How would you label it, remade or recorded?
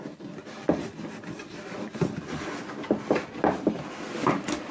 recorded